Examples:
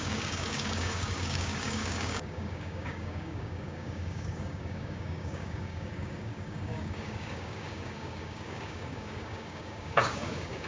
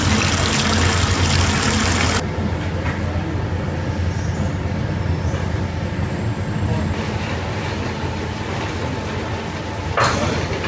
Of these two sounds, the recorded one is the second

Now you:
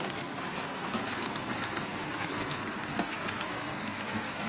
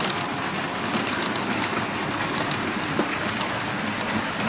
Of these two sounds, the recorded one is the second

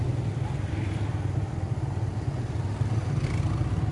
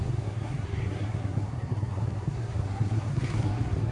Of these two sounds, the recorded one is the first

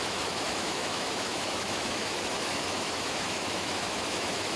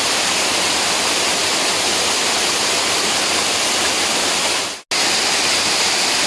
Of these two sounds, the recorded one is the second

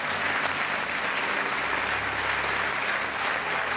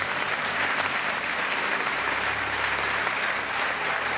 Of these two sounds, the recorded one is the first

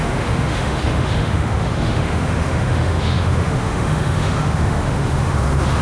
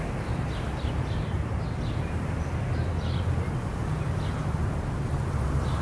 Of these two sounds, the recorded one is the second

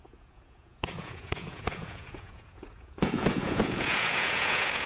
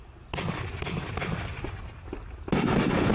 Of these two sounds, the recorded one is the second